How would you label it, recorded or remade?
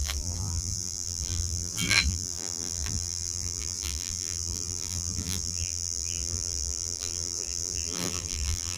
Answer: remade